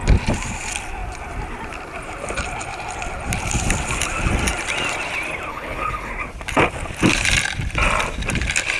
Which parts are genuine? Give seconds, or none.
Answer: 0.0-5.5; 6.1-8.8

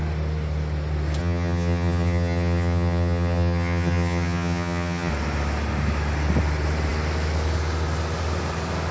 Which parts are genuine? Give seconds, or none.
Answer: 0.0-1.2; 5.1-8.9